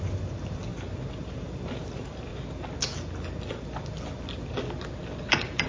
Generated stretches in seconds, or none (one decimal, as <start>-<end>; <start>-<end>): 0.0-0.7; 1.2-2.3